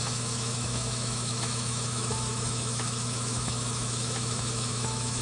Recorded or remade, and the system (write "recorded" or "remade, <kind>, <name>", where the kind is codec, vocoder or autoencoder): remade, autoencoder, DAC-VAE